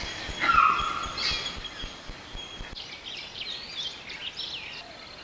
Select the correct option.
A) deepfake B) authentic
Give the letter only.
B